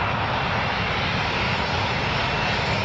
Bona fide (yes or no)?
yes